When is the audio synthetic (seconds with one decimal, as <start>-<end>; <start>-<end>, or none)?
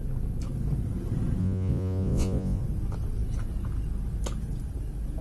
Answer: 1.4-2.6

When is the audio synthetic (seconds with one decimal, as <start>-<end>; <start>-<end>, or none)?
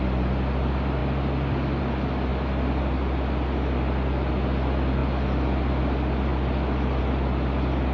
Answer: none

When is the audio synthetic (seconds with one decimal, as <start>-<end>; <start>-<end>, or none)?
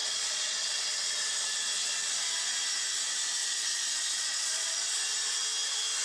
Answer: 0.0-0.8; 3.4-5.0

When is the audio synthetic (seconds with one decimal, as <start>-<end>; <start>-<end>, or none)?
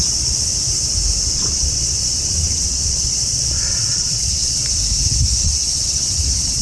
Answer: 0.0-0.5; 1.3-4.6; 5.4-6.6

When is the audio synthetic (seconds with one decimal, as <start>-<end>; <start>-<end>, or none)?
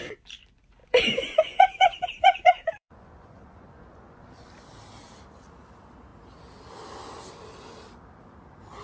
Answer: 0.8-4.5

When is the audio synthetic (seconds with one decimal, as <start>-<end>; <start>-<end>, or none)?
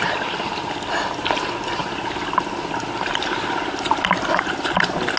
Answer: none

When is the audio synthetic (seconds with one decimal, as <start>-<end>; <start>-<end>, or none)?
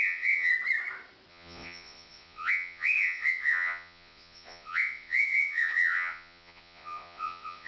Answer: 0.0-0.5; 1.3-7.7